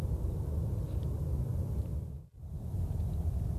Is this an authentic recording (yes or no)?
yes